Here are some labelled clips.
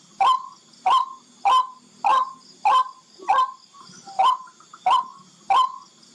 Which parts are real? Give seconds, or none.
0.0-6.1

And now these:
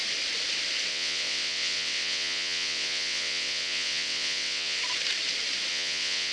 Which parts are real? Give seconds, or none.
0.0-0.9; 4.8-5.7

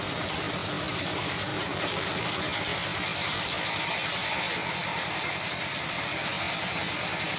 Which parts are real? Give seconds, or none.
0.0-1.5; 2.3-4.8; 6.2-7.4

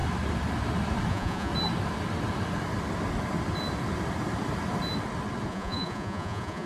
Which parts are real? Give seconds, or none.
0.0-1.1; 1.5-5.5